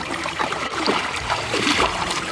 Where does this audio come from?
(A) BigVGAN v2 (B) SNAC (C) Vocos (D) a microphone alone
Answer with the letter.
A